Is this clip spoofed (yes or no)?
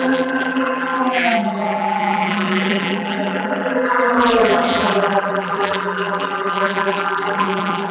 yes